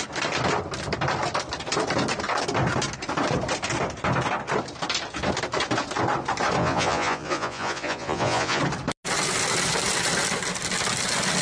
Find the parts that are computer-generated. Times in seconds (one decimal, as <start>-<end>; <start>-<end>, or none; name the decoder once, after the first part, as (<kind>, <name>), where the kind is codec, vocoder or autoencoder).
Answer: 6.6-8.6 (vocoder, Vocos)